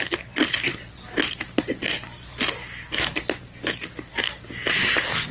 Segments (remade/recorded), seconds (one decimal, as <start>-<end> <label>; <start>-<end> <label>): 0.0-5.3 recorded